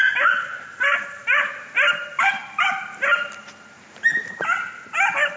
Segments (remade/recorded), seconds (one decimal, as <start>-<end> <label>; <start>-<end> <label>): 0.0-5.4 recorded